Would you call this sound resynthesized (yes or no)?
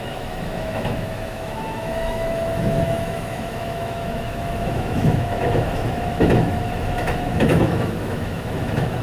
yes